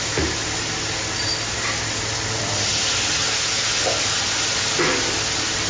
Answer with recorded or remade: recorded